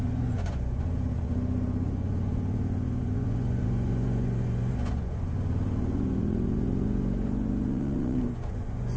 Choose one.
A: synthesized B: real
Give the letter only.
A